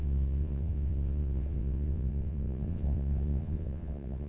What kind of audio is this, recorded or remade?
remade